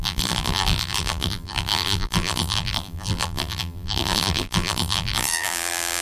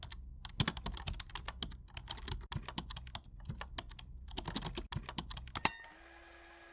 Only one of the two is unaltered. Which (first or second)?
second